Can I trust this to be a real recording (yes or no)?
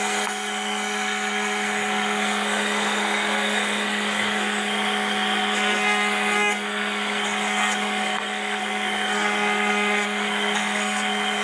no